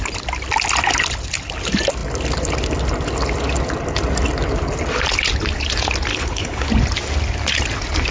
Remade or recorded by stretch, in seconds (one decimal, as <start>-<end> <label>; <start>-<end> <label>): 0.0-6.1 recorded; 6.1-6.7 remade; 6.7-8.1 recorded